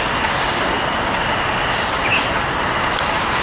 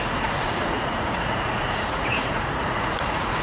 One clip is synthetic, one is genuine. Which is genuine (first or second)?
first